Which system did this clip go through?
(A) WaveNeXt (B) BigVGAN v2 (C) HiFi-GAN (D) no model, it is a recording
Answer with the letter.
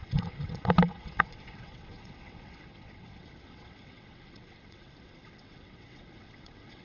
A